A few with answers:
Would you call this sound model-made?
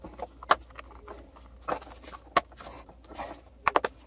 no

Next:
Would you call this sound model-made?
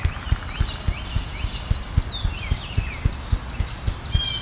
no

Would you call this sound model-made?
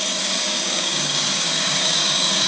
yes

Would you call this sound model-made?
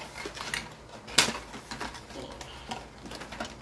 no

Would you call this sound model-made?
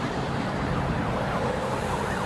yes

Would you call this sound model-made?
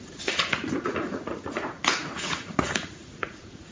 yes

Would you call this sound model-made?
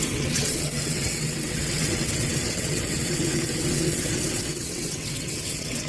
yes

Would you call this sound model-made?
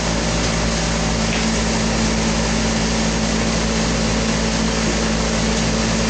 no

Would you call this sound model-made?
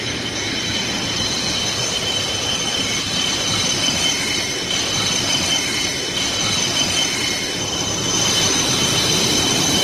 no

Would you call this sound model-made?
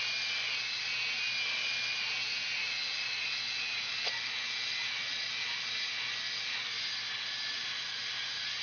no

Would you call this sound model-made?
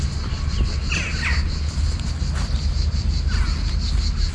no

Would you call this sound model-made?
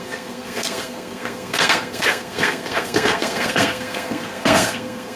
yes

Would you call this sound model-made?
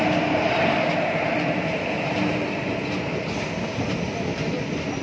no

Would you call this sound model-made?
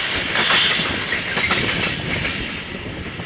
no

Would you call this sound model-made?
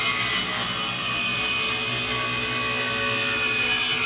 no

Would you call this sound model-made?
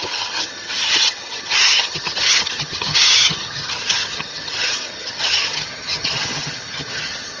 yes